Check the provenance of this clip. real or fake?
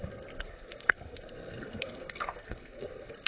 fake